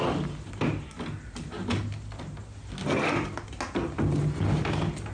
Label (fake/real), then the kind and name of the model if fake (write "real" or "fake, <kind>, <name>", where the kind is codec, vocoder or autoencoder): real